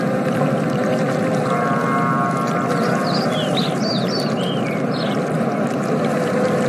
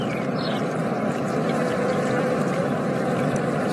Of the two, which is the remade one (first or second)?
second